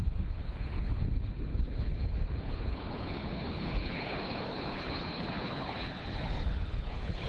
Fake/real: fake